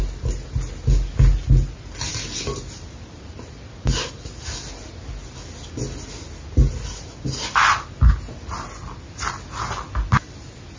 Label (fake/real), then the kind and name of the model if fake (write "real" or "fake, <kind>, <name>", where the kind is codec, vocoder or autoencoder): real